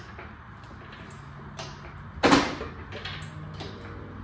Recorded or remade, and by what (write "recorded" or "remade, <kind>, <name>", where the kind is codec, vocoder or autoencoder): recorded